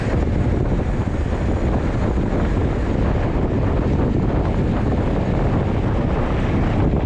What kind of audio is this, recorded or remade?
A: recorded